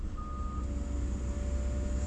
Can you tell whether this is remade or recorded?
recorded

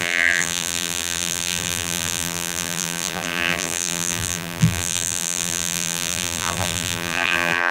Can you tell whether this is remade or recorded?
remade